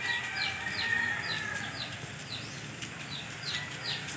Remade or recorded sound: recorded